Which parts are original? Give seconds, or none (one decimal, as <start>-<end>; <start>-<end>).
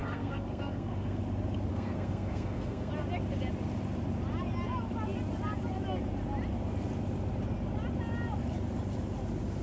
1.2-1.7; 2.9-9.6